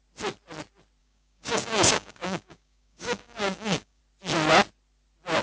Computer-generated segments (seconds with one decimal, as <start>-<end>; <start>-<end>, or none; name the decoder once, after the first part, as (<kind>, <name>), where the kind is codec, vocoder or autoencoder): 1.0-4.0 (codec, DAC)